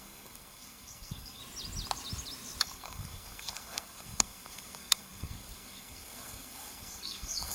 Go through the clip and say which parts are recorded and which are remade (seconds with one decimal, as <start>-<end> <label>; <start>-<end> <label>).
0.0-1.4 remade; 1.4-2.6 recorded; 2.6-7.5 remade